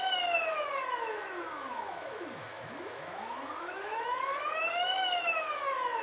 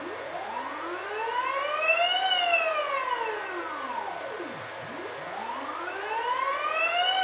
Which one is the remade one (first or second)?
first